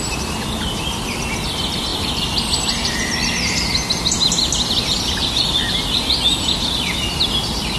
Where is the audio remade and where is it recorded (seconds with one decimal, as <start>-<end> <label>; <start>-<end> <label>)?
0.0-7.8 recorded